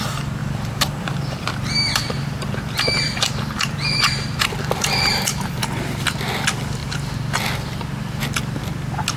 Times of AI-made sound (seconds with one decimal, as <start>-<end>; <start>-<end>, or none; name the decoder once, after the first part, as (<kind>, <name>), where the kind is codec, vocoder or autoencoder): 0.4-5.6 (vocoder, BigVGAN v2)